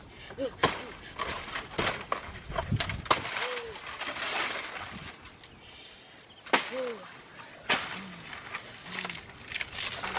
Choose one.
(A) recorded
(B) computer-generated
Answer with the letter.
A